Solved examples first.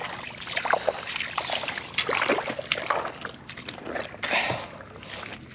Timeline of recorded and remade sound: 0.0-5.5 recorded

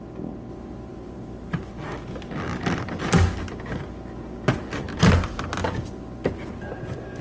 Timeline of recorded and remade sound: 0.0-0.9 recorded; 0.9-1.7 remade; 1.7-7.2 recorded

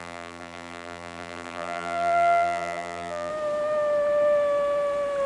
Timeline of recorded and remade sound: 0.0-3.3 remade; 3.3-5.3 recorded

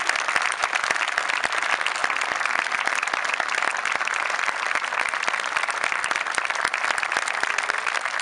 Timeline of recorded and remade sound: 0.0-2.0 recorded; 2.0-3.3 remade; 3.3-3.7 recorded; 3.7-6.8 remade; 6.8-8.2 recorded

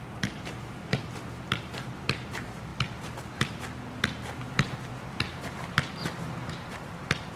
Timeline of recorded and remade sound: 0.0-2.7 remade; 2.7-5.0 recorded; 5.0-6.0 remade; 6.0-6.5 recorded; 6.5-7.4 remade

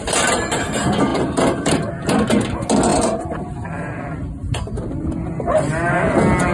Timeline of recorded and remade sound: 0.0-1.1 recorded; 1.1-1.9 remade; 1.9-2.9 recorded; 2.9-4.0 remade; 4.0-4.4 recorded; 4.4-5.1 remade; 5.1-6.5 recorded

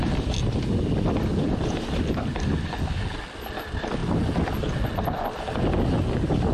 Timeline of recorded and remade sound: 0.0-6.5 recorded

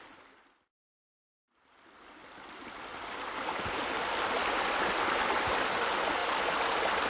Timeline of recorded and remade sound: 0.0-6.2 recorded; 6.2-7.1 remade